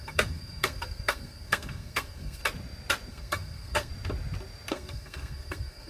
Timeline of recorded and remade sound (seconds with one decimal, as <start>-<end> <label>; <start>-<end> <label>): 0.0-2.4 remade; 2.4-3.1 recorded; 3.1-3.9 remade; 3.9-4.7 recorded; 4.7-5.9 remade